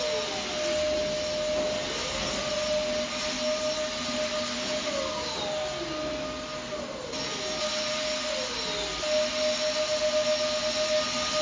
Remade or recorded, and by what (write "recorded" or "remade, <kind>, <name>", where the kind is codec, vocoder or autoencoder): recorded